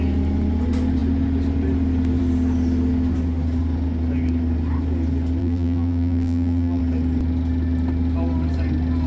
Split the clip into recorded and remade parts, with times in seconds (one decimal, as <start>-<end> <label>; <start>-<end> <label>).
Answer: 0.0-5.4 recorded; 5.4-6.8 remade; 6.8-9.1 recorded